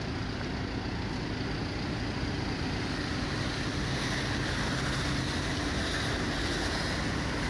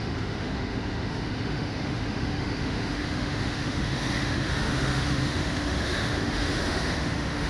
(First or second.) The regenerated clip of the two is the second